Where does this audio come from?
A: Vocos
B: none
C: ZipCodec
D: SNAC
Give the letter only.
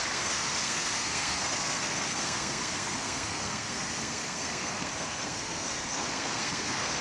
D